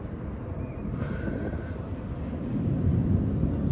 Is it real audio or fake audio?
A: real